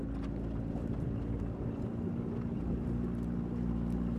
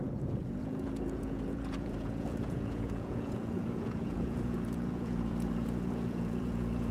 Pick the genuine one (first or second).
first